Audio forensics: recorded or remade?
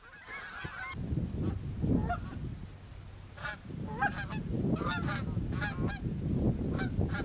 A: recorded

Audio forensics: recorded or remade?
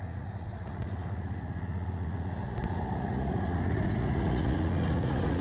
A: remade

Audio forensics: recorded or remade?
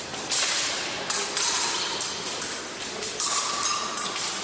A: recorded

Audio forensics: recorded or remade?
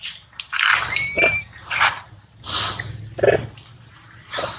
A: recorded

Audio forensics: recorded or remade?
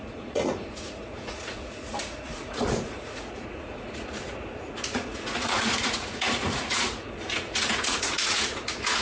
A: remade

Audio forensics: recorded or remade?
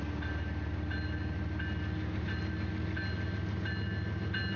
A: recorded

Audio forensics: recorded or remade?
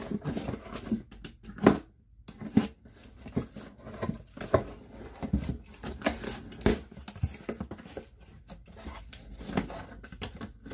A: recorded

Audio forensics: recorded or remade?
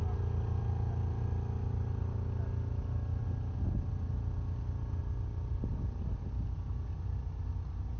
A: recorded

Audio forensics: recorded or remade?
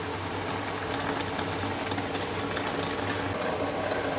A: recorded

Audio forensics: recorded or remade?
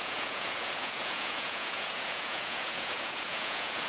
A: remade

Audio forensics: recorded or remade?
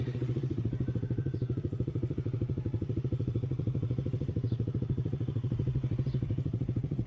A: remade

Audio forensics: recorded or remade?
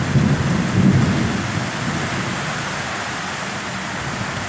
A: recorded